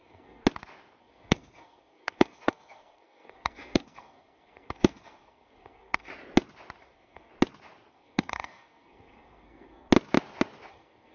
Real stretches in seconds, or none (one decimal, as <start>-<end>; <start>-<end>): 0.4-1.0; 6.1-6.8; 7.3-7.9; 9.9-10.7

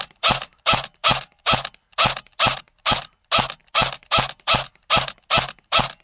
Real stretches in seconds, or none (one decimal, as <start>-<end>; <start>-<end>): 0.0-6.0

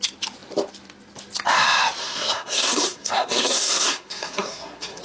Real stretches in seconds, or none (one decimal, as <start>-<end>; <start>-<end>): 0.0-2.0

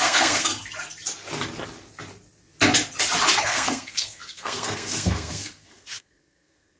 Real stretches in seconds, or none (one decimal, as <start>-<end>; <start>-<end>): 0.5-3.4